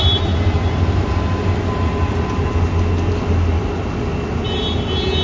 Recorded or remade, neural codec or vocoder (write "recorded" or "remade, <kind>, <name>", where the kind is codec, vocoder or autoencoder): recorded